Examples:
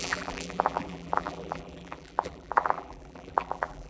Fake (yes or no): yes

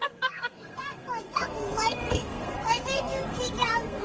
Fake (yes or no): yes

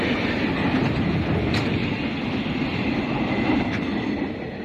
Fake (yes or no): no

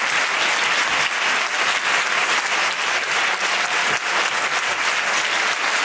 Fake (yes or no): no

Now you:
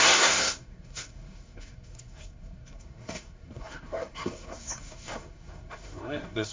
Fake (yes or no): yes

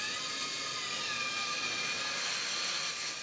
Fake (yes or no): no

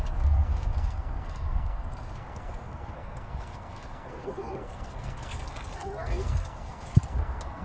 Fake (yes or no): yes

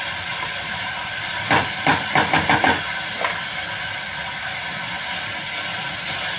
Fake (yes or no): no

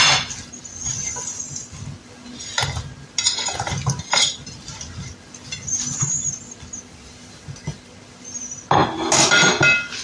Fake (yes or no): no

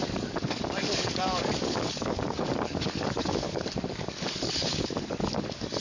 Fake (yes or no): yes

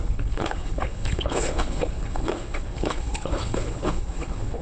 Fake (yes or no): yes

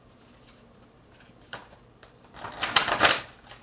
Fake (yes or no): yes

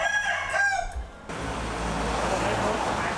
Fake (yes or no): no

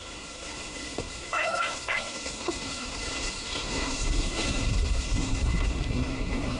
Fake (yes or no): yes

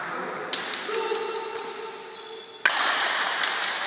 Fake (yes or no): no